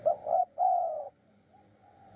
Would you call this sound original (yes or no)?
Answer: no